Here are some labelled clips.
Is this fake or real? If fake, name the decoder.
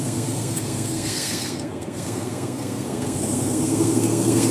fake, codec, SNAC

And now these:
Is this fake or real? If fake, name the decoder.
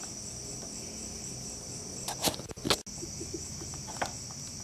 real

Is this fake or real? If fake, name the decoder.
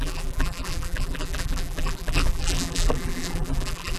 fake, vocoder, BigVGAN v2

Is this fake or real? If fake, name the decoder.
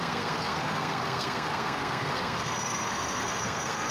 fake, codec, SNAC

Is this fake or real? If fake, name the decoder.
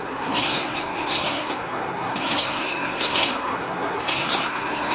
fake, codec, SNAC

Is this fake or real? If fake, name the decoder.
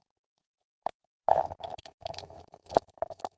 fake, autoencoder, DAC-VAE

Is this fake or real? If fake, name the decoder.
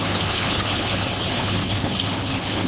fake, codec, HILCodec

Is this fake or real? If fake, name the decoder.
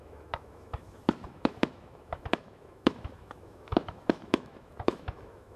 fake, autoencoder, DAC-VAE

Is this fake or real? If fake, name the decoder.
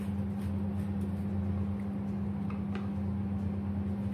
real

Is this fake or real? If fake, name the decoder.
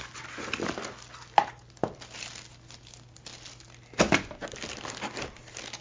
real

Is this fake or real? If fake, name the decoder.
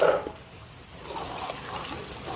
real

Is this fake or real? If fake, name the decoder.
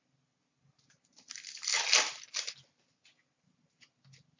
real